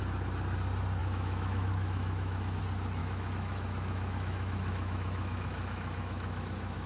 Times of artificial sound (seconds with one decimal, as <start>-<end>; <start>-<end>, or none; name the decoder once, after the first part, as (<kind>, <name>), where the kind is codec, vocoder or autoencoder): 1.0-2.6 (autoencoder, DAC-VAE); 3.0-6.9